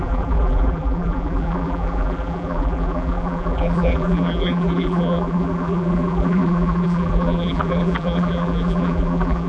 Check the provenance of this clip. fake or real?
fake